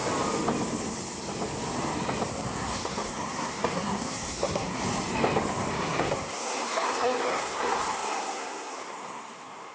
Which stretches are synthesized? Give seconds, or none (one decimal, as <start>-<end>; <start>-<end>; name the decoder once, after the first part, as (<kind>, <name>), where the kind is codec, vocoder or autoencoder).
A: 2.3-4.8 (codec, SNAC); 5.7-9.7